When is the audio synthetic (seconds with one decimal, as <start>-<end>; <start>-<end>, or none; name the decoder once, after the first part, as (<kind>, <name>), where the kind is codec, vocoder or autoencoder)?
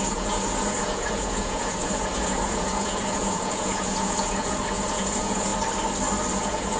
0.0-5.5 (vocoder, Vocos); 6.3-6.8